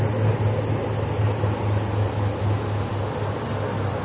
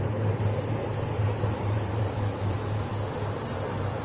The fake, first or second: second